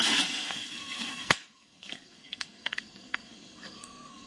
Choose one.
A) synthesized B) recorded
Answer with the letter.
A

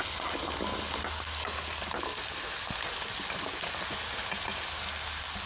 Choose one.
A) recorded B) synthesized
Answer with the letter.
A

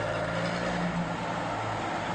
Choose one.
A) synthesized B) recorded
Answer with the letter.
B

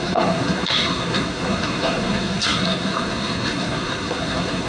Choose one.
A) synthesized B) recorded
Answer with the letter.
A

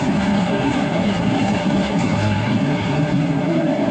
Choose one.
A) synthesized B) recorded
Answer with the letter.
A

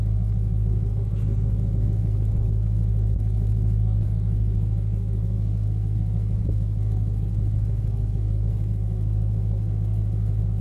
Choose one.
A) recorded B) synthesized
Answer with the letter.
B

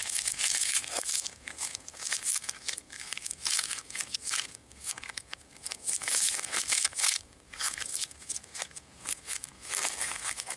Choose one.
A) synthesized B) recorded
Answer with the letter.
A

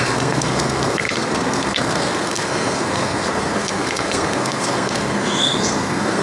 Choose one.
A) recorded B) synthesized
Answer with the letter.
B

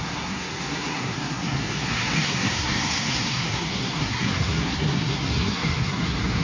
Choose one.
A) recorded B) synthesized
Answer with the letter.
B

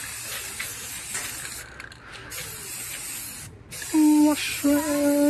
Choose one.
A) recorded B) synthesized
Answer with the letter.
A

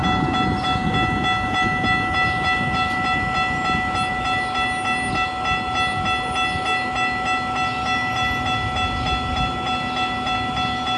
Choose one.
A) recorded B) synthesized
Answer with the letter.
A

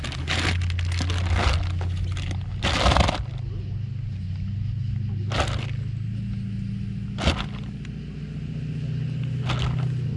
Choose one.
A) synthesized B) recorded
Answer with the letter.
B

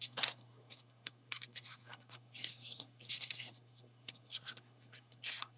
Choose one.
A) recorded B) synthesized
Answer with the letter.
B